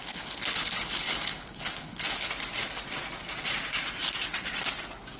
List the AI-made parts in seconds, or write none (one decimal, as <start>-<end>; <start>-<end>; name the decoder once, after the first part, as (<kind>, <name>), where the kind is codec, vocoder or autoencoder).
0.0-2.3 (codec, HILCodec)